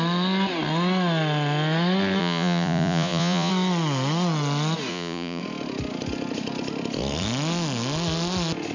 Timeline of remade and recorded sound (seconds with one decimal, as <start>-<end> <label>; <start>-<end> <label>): 0.0-2.2 recorded; 2.2-3.5 remade; 3.5-4.9 recorded; 4.9-5.4 remade; 5.4-8.7 recorded